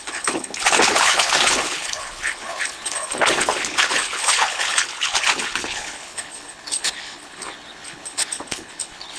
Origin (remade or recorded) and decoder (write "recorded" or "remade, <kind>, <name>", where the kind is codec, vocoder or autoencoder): remade, codec, HILCodec